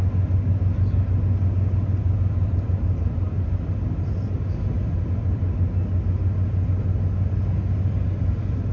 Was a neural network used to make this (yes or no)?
no